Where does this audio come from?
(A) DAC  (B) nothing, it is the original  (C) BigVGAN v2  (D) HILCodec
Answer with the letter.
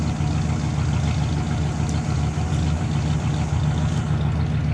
B